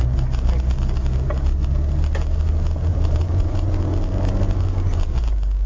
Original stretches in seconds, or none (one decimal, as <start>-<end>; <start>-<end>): 0.0-2.9; 3.7-5.7